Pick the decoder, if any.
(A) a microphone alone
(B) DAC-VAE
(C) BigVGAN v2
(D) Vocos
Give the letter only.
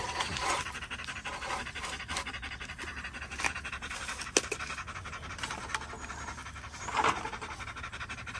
A